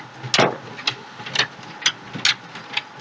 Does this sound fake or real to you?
real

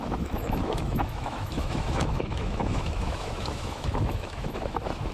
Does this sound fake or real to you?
fake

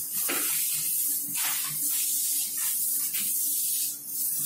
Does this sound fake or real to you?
real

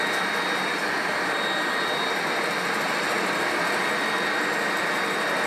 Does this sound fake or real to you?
real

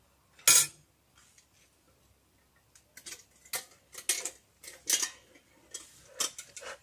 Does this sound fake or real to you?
real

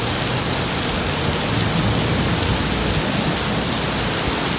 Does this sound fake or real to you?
real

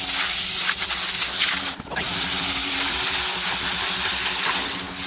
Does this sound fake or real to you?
real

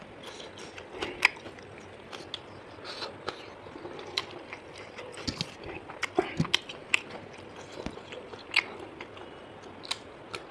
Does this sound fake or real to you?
real